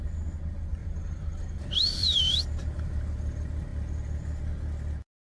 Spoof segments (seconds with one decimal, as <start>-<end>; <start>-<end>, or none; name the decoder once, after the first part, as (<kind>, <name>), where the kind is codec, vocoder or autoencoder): 0.8-2.2 (vocoder, BigVGAN v2)